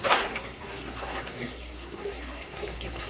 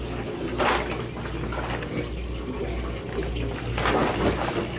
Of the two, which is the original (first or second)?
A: second